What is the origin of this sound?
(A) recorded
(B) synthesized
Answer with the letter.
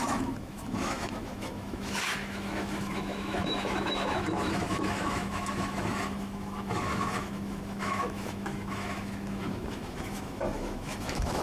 B